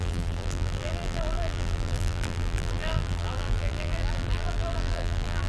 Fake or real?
fake